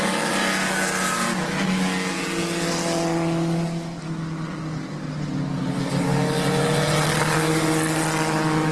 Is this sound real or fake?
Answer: real